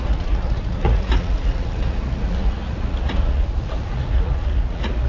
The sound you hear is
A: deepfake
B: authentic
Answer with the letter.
A